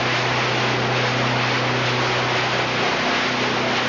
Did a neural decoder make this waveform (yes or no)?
no